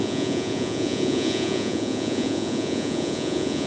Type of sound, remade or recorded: remade